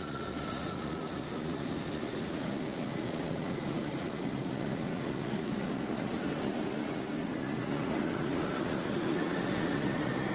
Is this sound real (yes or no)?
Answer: no